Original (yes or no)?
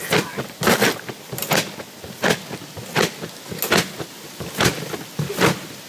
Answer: yes